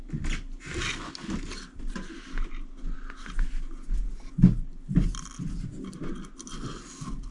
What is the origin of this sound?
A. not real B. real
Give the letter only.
B